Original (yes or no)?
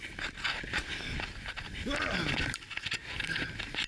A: yes